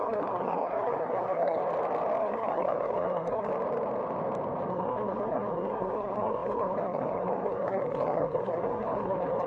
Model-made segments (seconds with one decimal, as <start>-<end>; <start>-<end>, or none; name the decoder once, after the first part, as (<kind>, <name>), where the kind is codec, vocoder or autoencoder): 0.0-1.6 (codec, SNAC); 2.2-3.5; 4.7-9.5